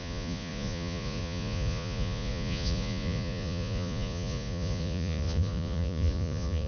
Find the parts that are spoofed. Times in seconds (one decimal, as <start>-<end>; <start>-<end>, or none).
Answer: 0.0-6.7